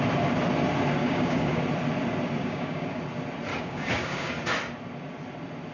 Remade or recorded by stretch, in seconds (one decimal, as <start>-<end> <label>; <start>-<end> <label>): 0.0-1.0 recorded; 1.0-1.6 remade; 1.6-2.4 recorded; 2.4-3.0 remade; 3.0-3.5 recorded; 3.5-4.3 remade; 4.3-5.7 recorded